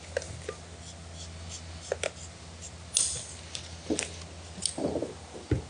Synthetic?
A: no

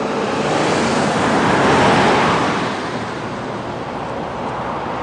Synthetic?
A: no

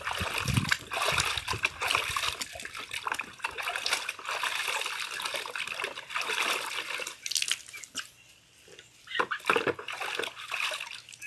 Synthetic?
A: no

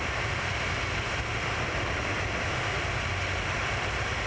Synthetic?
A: no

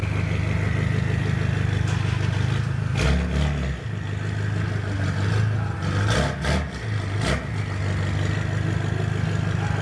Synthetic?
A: no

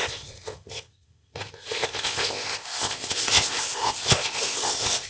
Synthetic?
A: yes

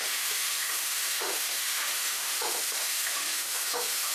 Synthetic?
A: yes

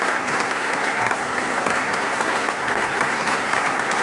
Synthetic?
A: yes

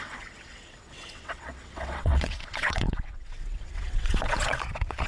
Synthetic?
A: yes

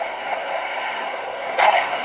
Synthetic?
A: yes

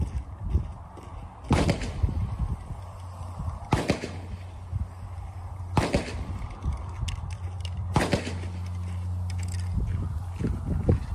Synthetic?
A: no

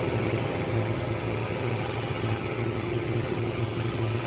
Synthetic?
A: yes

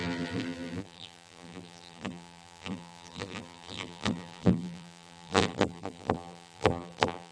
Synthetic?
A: yes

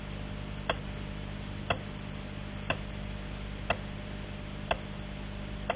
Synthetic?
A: no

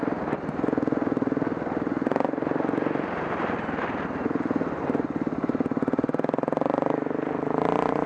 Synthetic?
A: no